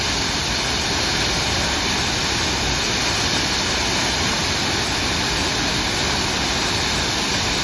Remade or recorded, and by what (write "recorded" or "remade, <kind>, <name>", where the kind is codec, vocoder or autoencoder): recorded